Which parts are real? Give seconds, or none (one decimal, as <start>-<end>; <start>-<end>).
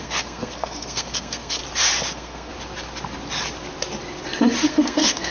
1.6-2.1; 2.5-4.7